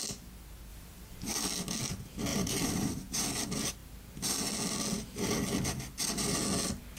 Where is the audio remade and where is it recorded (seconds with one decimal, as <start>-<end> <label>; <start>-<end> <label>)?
0.0-0.7 recorded; 0.7-1.3 remade; 1.3-2.3 recorded; 2.3-3.2 remade; 3.2-7.0 recorded